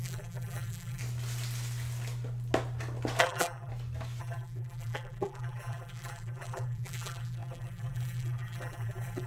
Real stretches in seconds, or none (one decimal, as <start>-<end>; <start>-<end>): 1.0-3.2; 3.7-4.2

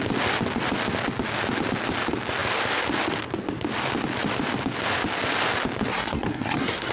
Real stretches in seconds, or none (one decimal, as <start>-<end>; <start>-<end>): 0.0-5.9

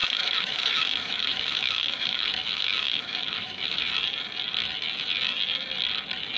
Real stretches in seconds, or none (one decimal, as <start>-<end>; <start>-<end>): 3.8-6.4

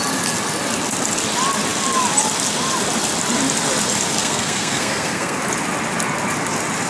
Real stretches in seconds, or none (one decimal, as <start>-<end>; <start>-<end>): 0.0-4.2; 5.4-6.9

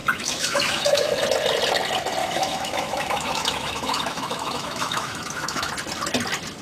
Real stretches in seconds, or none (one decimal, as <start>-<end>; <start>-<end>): 1.1-2.2; 5.7-6.6

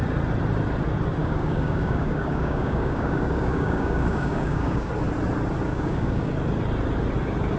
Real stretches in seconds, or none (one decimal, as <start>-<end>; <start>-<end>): 0.0-1.2; 4.9-5.7; 6.3-7.6

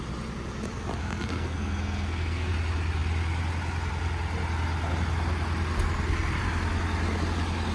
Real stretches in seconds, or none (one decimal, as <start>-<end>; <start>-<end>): 0.0-1.0; 2.5-7.7